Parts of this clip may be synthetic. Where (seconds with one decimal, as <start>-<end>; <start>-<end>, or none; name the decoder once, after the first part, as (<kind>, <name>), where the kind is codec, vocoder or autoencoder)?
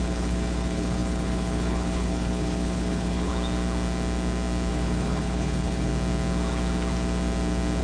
0.0-3.3 (codec, HILCodec); 4.7-5.9